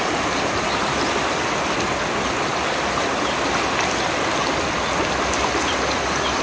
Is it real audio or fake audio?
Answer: real